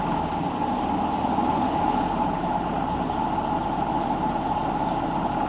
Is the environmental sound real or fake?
real